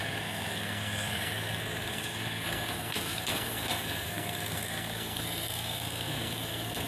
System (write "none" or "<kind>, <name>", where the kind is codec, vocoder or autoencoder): codec, SNAC